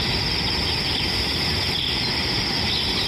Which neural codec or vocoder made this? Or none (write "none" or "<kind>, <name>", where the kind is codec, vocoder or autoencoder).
none